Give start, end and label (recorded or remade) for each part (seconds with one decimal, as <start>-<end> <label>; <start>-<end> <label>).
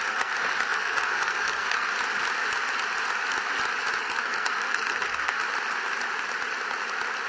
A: 0.0-1.9 remade; 1.9-4.0 recorded; 4.0-5.4 remade; 5.4-7.3 recorded